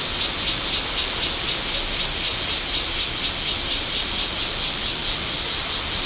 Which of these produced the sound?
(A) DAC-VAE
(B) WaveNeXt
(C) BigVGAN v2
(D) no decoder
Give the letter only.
D